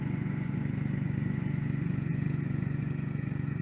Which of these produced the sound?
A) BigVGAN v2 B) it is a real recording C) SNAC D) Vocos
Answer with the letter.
D